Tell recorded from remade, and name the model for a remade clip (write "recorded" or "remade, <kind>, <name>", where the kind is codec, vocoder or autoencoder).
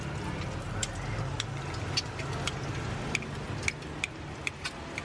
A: recorded